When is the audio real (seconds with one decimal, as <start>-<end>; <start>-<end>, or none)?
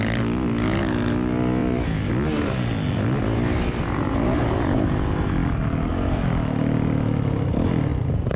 0.0-1.6; 2.1-7.9